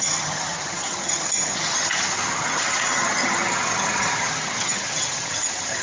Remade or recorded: remade